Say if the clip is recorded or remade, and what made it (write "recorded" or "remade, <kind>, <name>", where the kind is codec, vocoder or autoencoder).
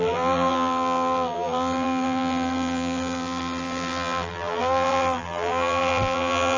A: remade, vocoder, BigVGAN v2